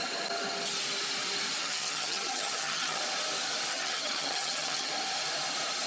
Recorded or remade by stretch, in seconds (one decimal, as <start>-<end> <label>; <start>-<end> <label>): 0.0-1.6 recorded; 1.6-3.0 remade; 3.0-3.7 recorded; 3.7-4.9 remade; 4.9-5.9 recorded